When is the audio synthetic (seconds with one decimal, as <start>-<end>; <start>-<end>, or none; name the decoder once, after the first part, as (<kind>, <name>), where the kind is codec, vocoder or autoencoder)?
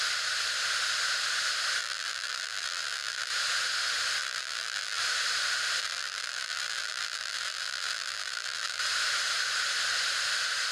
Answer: 1.8-3.3 (vocoder, BigVGAN v2); 4.2-5.0; 5.8-8.8